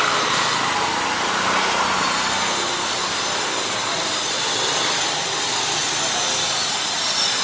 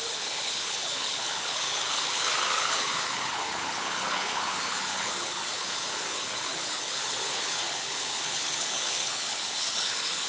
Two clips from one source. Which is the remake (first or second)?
second